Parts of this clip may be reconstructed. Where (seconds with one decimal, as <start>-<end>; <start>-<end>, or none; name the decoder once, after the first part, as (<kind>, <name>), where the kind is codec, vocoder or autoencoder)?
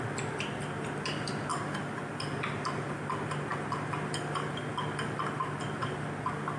none